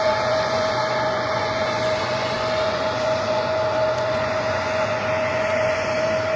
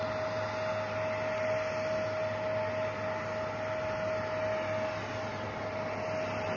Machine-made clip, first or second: first